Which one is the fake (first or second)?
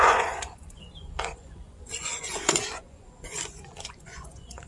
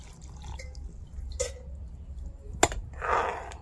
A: first